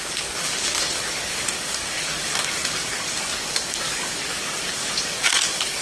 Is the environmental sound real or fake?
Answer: fake